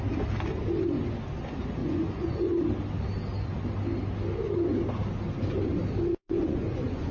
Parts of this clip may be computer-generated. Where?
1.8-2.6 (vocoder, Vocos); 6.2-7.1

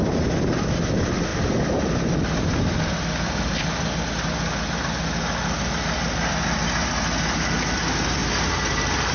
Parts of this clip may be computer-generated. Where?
none

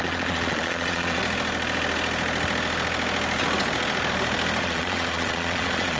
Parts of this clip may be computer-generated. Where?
0.0-1.2 (vocoder, Vocos); 4.6-6.0